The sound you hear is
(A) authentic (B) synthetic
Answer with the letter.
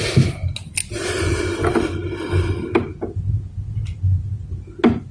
A